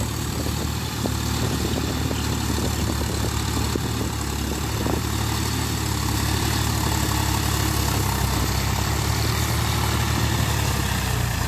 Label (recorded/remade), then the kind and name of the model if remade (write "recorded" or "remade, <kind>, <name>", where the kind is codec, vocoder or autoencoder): recorded